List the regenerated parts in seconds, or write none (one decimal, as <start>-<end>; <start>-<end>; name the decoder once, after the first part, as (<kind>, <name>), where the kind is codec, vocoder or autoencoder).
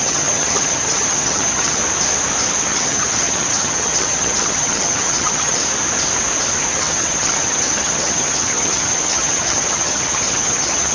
0.0-1.8 (vocoder, HiFi-GAN); 2.6-5.6; 6.7-10.9